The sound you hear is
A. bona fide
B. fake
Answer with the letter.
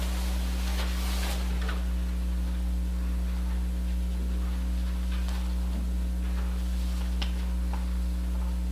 A